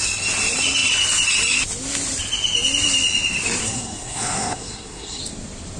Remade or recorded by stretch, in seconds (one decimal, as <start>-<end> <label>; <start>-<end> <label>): 0.0-3.6 recorded; 3.6-5.2 remade; 5.2-5.8 recorded